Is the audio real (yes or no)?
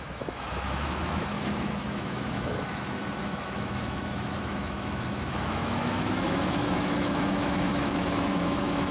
no